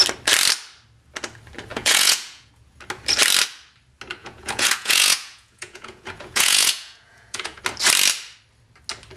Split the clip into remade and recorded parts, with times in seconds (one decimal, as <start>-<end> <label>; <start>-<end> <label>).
0.0-1.7 recorded; 1.7-2.5 remade; 2.5-4.2 recorded; 4.2-7.6 remade; 7.6-9.2 recorded